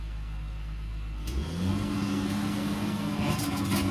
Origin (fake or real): fake